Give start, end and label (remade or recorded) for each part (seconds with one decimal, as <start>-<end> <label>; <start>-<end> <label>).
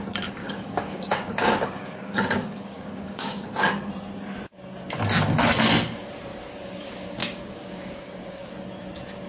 0.0-0.4 recorded; 0.4-3.9 remade; 3.9-7.2 recorded; 7.2-8.5 remade; 8.5-9.3 recorded